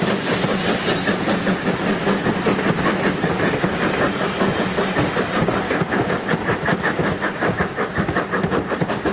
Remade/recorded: recorded